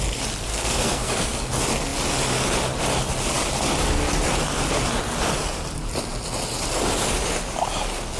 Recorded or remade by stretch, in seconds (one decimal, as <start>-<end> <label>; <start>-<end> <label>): 0.0-0.5 recorded; 0.5-1.5 remade; 1.5-8.2 recorded